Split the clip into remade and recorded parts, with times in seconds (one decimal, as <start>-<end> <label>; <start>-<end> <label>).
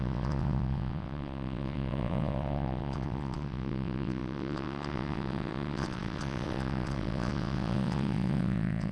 0.0-8.9 remade